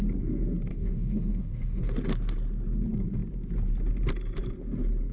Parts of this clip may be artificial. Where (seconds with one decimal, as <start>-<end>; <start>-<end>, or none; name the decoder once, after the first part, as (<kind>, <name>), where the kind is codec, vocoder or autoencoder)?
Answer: 0.7-1.9 (autoencoder, DAC-VAE)